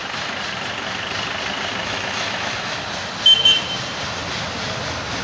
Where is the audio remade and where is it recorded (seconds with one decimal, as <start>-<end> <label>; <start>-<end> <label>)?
0.0-1.8 recorded; 1.8-2.8 remade; 2.8-5.2 recorded